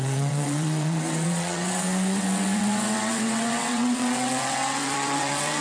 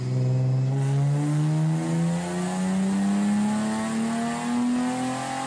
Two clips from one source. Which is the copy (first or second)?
first